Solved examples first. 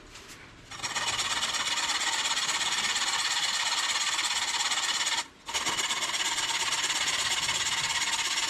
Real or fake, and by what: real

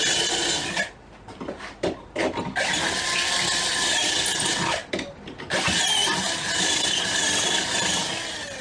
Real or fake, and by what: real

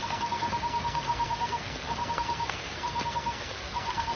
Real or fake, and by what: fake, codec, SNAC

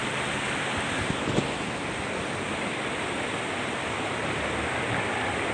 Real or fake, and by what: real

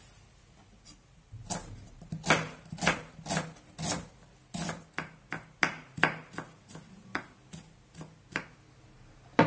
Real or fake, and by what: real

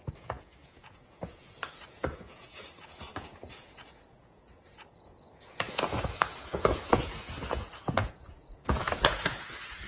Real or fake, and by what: fake, vocoder, Vocos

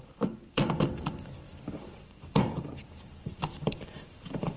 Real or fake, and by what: fake, vocoder, BigVGAN v2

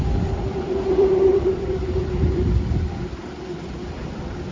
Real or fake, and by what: fake, vocoder, BigVGAN v2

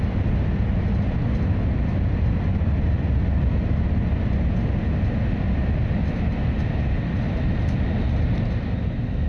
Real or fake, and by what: real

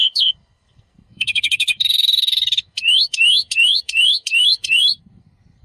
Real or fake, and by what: fake, codec, SNAC